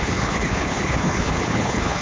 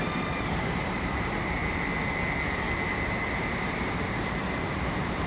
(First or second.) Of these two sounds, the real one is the second